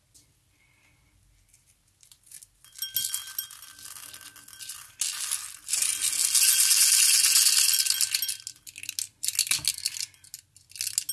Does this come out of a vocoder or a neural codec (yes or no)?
no